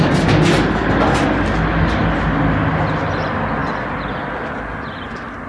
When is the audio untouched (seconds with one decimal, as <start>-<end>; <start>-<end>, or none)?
0.0-5.5